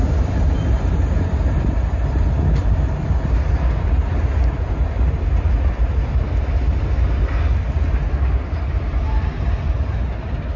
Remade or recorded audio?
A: recorded